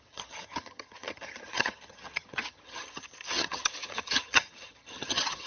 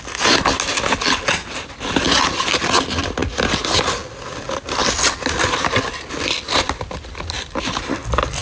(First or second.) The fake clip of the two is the first